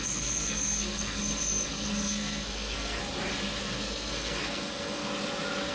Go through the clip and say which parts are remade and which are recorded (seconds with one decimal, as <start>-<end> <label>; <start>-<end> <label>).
0.0-1.2 remade; 1.2-1.7 recorded; 1.7-3.0 remade; 3.0-3.6 recorded; 3.6-5.0 remade; 5.0-5.7 recorded